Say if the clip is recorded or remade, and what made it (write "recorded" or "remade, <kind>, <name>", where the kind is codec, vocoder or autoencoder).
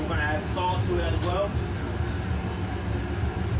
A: recorded